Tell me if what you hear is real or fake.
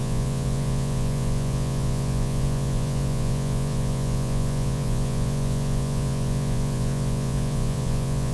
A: fake